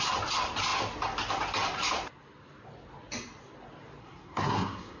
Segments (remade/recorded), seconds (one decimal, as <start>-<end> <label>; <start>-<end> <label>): 0.0-4.0 recorded; 4.0-5.0 remade